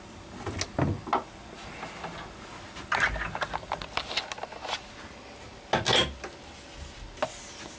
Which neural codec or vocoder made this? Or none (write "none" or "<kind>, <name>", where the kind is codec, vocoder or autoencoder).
none